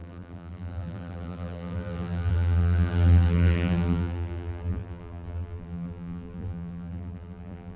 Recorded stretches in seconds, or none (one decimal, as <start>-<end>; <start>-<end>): none